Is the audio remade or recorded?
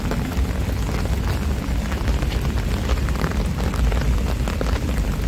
recorded